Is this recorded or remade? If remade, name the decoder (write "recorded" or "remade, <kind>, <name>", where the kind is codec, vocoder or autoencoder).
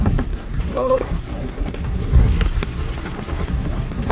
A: remade, codec, SNAC